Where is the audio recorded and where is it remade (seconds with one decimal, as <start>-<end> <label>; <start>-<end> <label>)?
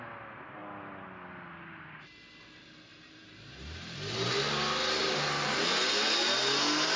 0.0-2.9 recorded; 2.9-4.5 remade; 4.5-5.0 recorded; 5.0-5.6 remade; 5.6-7.0 recorded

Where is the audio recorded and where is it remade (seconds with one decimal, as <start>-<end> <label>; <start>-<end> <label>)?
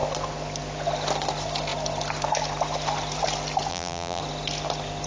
0.0-3.7 recorded; 3.7-4.2 remade; 4.2-5.1 recorded